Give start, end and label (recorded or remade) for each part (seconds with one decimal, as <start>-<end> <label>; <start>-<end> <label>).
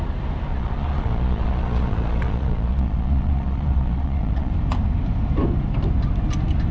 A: 0.0-0.5 recorded; 0.5-4.5 remade; 4.5-6.7 recorded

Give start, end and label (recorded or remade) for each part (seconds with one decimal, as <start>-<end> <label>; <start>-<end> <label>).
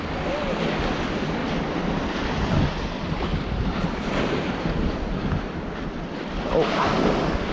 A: 0.0-1.4 recorded; 1.4-4.8 remade; 4.8-7.5 recorded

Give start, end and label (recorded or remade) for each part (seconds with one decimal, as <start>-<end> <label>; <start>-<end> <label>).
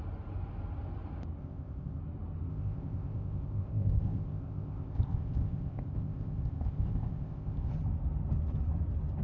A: 0.0-1.4 recorded; 1.4-2.0 remade; 2.0-2.5 recorded; 2.5-7.7 remade; 7.7-9.2 recorded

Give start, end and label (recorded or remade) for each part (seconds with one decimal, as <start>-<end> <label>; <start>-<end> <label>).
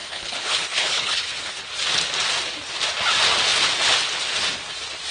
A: 0.0-1.6 remade; 1.6-5.1 recorded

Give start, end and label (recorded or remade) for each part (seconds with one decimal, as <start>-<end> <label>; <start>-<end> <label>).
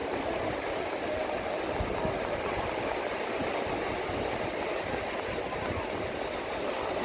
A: 0.0-7.0 recorded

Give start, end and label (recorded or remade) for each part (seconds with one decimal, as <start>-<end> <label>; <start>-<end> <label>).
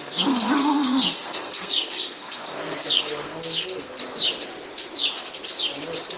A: 0.0-4.0 remade; 4.0-6.2 recorded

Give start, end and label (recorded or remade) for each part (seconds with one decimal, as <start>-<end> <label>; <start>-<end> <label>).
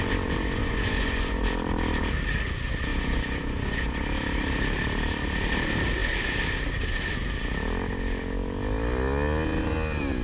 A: 0.0-0.6 recorded; 0.6-1.4 remade; 1.4-2.9 recorded; 2.9-4.0 remade; 4.0-10.2 recorded